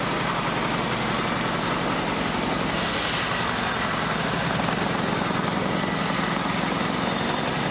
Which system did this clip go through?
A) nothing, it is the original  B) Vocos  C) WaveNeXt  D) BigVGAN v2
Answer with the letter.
A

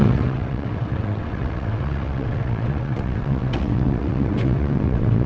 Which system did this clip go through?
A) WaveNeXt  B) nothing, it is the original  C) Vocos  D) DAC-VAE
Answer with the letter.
A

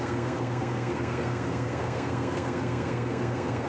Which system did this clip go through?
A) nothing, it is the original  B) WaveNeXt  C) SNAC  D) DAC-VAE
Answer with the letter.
C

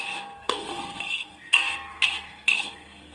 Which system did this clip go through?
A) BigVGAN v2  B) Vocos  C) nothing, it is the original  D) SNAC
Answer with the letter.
D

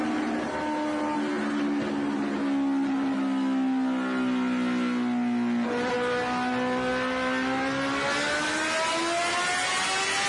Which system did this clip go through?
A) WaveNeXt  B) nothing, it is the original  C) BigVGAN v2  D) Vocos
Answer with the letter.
B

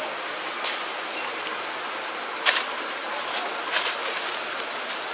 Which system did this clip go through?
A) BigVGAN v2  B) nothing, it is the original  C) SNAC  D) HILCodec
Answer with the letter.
B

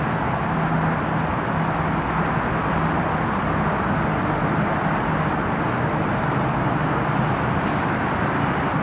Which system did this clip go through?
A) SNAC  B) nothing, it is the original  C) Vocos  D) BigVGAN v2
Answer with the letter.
B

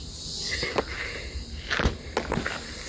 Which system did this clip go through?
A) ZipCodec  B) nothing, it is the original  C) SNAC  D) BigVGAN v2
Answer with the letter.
B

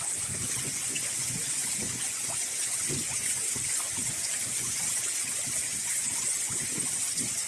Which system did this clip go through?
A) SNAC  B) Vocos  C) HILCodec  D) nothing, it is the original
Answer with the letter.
B